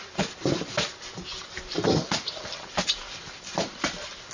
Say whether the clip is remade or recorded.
recorded